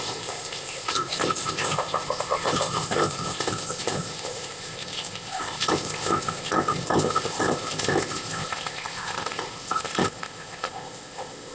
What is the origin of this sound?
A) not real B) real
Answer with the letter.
A